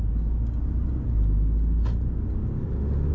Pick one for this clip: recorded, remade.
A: recorded